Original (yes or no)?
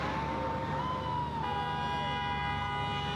yes